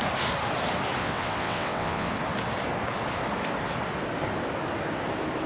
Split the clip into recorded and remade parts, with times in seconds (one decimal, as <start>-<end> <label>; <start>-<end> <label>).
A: 0.0-1.0 recorded; 1.0-2.1 remade; 2.1-5.5 recorded